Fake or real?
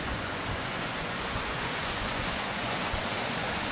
fake